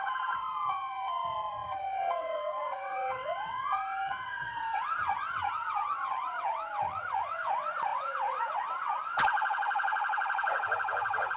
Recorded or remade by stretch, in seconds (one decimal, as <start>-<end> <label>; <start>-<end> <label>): 0.0-11.4 remade

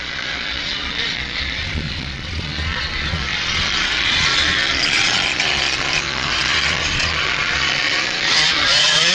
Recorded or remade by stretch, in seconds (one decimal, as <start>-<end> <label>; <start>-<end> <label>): 0.0-9.1 remade

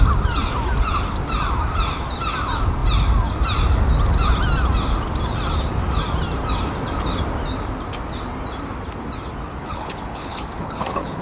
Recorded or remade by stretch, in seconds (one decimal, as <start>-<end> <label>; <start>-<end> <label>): 0.0-9.6 recorded; 9.6-11.2 remade

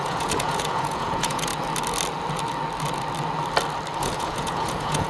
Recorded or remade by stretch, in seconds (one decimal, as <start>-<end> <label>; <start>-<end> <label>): 0.0-1.5 remade; 1.5-4.0 recorded; 4.0-5.1 remade

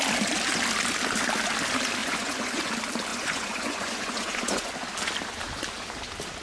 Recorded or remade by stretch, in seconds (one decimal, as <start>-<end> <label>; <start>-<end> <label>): 0.0-2.0 recorded; 2.0-2.7 remade; 2.7-3.1 recorded; 3.1-4.7 remade; 4.7-6.4 recorded

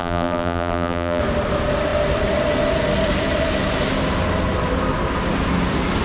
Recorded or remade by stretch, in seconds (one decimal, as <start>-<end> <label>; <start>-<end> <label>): 0.0-1.2 remade; 1.2-6.0 recorded

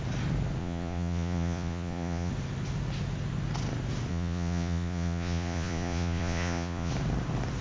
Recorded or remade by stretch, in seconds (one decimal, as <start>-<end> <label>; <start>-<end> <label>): 0.0-0.6 recorded; 0.6-2.3 remade; 2.3-4.1 recorded; 4.1-6.9 remade; 6.9-7.6 recorded